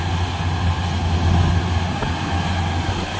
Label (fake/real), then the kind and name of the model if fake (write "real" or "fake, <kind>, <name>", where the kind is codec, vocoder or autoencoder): real